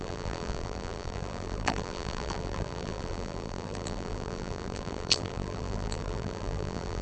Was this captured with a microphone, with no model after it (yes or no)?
no